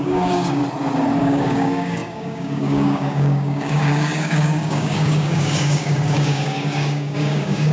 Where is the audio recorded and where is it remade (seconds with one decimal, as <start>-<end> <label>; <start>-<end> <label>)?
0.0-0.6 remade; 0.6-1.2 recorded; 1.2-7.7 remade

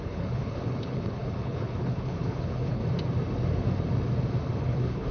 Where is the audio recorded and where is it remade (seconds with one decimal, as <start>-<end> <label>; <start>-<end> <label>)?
0.0-2.8 remade; 2.8-4.6 recorded; 4.6-5.1 remade

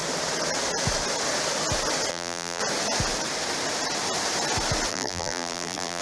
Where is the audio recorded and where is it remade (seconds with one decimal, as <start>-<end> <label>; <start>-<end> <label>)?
0.0-2.1 recorded; 2.1-2.6 remade; 2.6-4.9 recorded; 4.9-6.0 remade